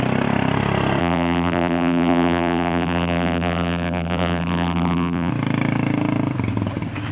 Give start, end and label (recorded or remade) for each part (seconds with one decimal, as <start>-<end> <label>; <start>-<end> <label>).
0.0-1.0 recorded; 1.0-5.3 remade; 5.3-7.1 recorded